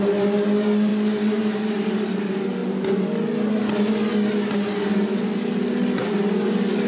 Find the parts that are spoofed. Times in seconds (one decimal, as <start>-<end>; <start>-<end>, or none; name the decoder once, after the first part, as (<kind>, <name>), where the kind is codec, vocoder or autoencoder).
none